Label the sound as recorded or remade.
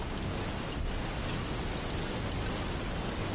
recorded